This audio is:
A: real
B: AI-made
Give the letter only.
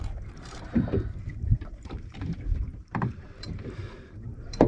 B